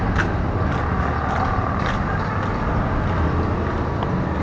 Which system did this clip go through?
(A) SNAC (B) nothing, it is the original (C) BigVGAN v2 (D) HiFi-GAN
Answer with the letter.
B